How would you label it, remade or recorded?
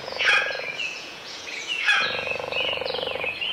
remade